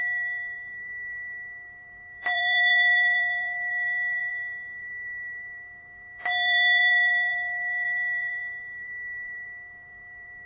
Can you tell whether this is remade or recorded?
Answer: remade